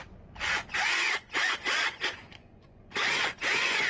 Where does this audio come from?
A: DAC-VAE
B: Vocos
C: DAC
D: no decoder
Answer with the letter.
B